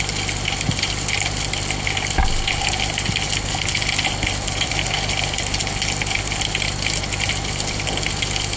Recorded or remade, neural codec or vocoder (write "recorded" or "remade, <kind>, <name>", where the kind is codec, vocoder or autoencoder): recorded